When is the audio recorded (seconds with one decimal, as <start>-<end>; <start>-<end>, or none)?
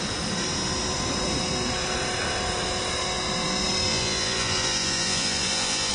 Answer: 0.0-3.9